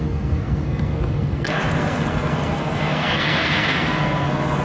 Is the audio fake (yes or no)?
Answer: yes